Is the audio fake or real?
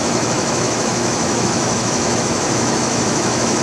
fake